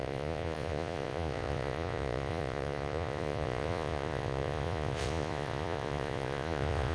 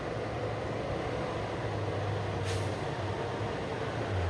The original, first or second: second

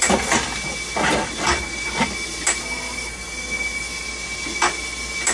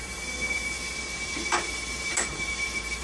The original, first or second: first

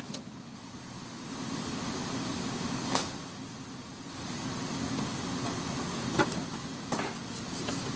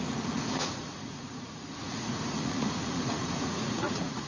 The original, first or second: first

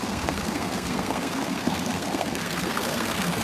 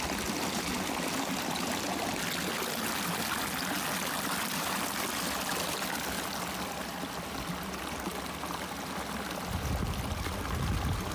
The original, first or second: second